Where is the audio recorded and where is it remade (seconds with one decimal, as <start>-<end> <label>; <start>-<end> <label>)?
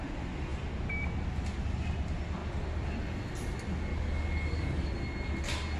0.0-3.9 recorded; 3.9-4.9 remade; 4.9-5.8 recorded